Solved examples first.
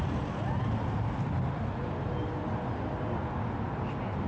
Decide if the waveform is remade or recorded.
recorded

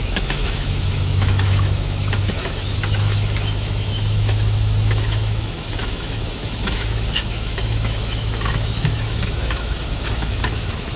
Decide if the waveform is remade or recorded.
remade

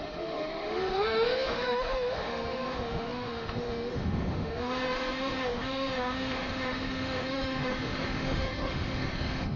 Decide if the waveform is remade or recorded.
remade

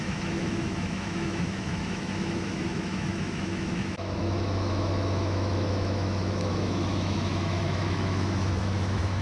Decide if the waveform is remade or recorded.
remade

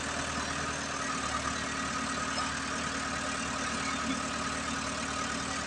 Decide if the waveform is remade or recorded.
recorded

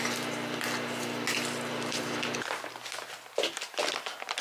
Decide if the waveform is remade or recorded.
recorded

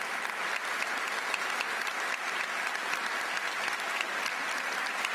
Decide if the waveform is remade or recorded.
recorded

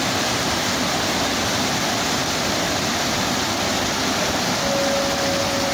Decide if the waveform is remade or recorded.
recorded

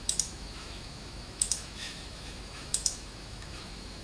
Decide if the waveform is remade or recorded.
remade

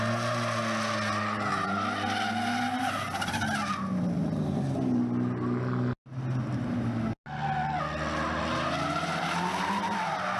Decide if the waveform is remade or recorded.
recorded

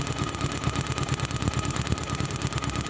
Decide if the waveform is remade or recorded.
recorded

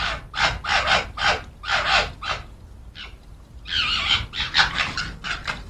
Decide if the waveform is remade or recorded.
recorded